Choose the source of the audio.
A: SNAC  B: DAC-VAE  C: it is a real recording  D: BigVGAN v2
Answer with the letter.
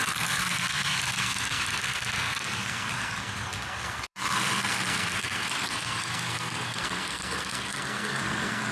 A